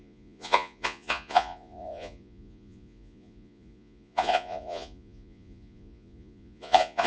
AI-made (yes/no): yes